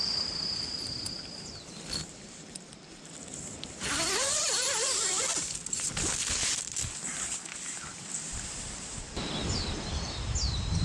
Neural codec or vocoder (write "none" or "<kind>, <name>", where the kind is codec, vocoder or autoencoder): vocoder, BigVGAN v2